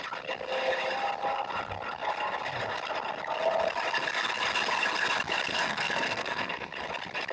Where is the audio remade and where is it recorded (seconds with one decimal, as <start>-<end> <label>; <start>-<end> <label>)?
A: 0.0-5.5 recorded; 5.5-6.7 remade; 6.7-7.3 recorded